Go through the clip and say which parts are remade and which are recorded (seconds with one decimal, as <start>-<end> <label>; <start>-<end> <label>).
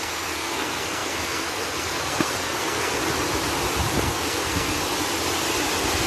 0.0-3.0 remade; 3.0-4.0 recorded; 4.0-4.8 remade; 4.8-6.1 recorded